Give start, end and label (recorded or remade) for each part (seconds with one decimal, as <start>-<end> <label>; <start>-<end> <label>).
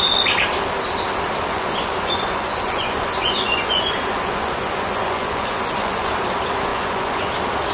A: 0.0-1.5 recorded; 1.5-6.1 remade; 6.1-6.7 recorded; 6.7-7.3 remade; 7.3-7.7 recorded